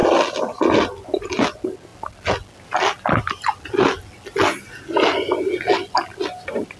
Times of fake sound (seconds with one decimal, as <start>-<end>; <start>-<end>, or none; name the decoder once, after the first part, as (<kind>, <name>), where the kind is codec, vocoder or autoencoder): none